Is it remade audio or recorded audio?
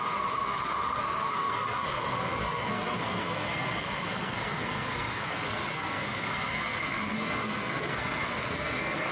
remade